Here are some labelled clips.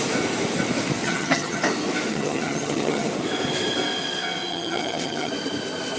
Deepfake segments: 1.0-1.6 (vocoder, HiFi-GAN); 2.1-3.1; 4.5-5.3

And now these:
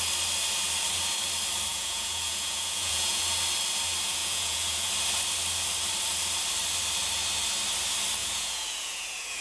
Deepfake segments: 1.7-3.2 (vocoder, Vocos); 4.2-4.9; 8.2-9.4

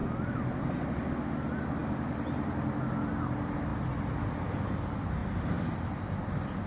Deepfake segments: 0.0-0.9 (vocoder, BigVGAN v2)